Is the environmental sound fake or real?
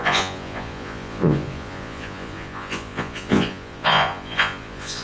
fake